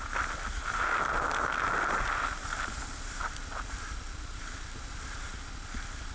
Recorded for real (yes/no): yes